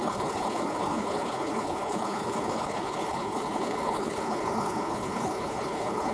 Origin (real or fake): fake